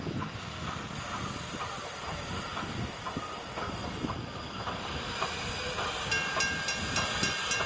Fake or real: real